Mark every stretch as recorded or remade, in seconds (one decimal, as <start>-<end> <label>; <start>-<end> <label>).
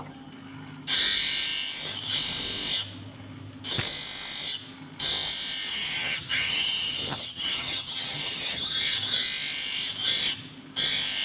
0.0-5.7 recorded; 5.7-8.8 remade; 8.8-11.2 recorded